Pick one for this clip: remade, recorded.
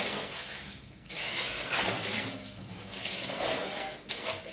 remade